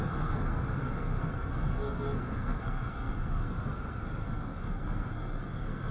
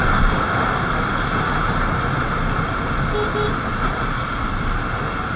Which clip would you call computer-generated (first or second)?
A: first